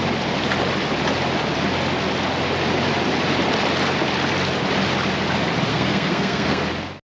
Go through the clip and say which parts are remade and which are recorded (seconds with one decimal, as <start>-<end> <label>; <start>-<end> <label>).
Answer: 0.0-5.7 recorded; 5.7-6.6 remade; 6.6-7.1 recorded